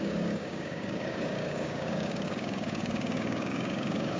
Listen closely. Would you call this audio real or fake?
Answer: fake